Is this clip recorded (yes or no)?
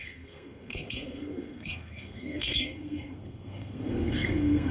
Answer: no